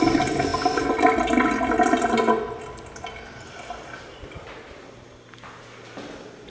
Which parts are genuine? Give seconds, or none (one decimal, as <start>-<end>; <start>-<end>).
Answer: 0.0-6.5

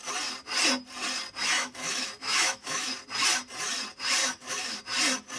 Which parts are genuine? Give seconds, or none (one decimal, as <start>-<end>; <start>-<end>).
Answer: 0.0-1.4; 2.9-4.2; 4.8-5.4

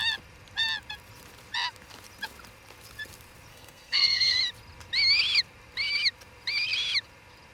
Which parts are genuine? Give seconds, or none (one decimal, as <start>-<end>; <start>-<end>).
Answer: 0.0-3.5; 4.4-7.5

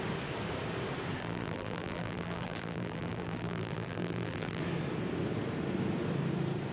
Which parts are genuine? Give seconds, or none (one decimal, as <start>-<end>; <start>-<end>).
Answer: 0.0-1.2; 4.6-6.7